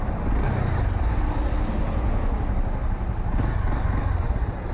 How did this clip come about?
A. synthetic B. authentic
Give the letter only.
B